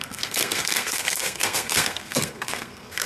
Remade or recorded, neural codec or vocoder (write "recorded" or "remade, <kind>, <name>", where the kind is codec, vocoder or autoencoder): remade, codec, SNAC